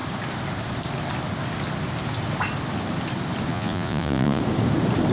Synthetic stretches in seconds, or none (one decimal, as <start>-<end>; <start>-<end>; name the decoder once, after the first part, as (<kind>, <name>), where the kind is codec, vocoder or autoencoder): 3.5-4.4 (vocoder, Vocos)